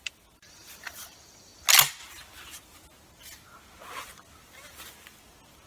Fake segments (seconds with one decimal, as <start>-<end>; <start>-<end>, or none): none